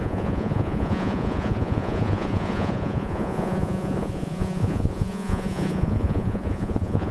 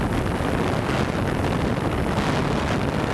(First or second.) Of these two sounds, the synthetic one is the first